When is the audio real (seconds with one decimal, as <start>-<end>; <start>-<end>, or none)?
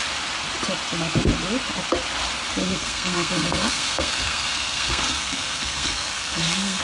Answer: 0.0-2.6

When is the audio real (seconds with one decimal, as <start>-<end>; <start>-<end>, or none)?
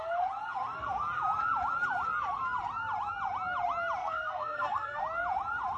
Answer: 0.0-4.0; 5.0-5.8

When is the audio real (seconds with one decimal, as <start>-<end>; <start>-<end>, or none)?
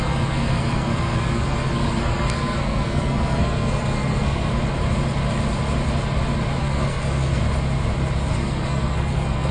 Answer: 4.5-6.6; 7.4-8.3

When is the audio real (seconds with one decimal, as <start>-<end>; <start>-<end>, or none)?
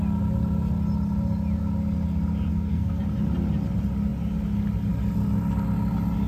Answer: 0.0-2.5; 3.0-6.3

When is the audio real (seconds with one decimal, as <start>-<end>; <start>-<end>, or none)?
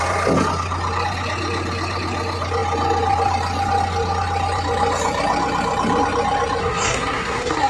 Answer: 0.0-6.6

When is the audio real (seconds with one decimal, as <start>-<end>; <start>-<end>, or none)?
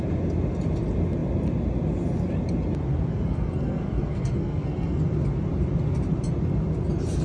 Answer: 0.0-3.1; 5.0-7.2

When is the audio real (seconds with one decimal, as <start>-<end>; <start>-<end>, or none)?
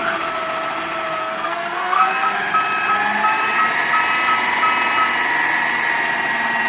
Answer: 0.0-1.2; 2.4-6.7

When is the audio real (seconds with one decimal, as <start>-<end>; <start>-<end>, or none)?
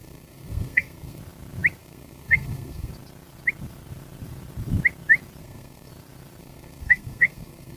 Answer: 1.2-1.8; 2.9-5.4; 5.9-6.4